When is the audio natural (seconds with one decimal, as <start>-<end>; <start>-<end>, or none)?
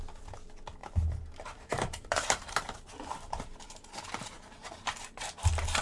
0.0-0.8; 3.9-5.8